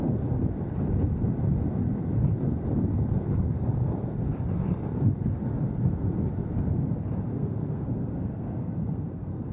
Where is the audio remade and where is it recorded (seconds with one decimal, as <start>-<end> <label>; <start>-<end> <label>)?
0.0-7.3 recorded; 7.3-9.5 remade

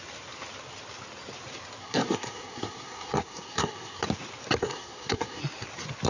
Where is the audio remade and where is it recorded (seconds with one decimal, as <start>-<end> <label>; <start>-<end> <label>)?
0.0-1.8 recorded; 1.8-4.0 remade; 4.0-4.6 recorded; 4.6-5.4 remade; 5.4-6.1 recorded

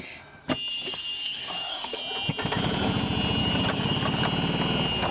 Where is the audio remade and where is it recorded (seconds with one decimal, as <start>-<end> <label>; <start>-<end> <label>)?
0.0-0.7 recorded; 0.7-2.0 remade; 2.0-3.4 recorded; 3.4-4.2 remade; 4.2-5.1 recorded

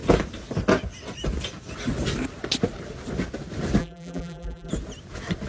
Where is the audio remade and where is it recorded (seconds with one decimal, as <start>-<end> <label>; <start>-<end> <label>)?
0.0-3.8 recorded; 3.8-4.7 remade; 4.7-5.5 recorded

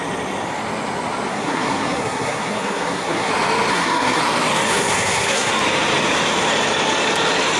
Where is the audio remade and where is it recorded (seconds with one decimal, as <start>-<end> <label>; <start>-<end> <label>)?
0.0-1.3 recorded; 1.3-3.3 remade; 3.3-3.7 recorded; 3.7-4.2 remade; 4.2-4.7 recorded; 4.7-5.5 remade; 5.5-7.6 recorded

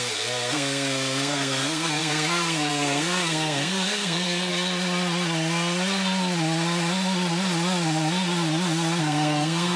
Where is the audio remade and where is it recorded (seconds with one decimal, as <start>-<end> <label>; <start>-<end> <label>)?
0.0-4.5 remade; 4.5-9.0 recorded; 9.0-9.8 remade

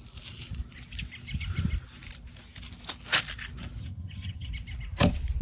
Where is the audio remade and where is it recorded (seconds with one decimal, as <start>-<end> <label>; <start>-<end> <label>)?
0.0-3.8 recorded; 3.8-4.5 remade; 4.5-5.4 recorded

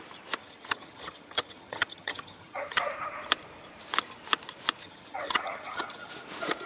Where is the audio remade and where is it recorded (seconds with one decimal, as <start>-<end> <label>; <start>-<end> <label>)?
0.0-0.4 recorded; 0.4-2.8 remade; 2.8-4.8 recorded; 4.8-6.1 remade; 6.1-6.7 recorded